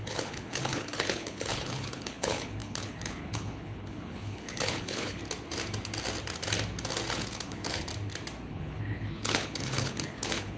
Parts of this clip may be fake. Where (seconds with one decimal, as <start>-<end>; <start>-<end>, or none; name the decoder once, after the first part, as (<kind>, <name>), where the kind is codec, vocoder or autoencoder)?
0.0-5.2 (codec, HILCodec); 7.1-7.9; 8.5-10.6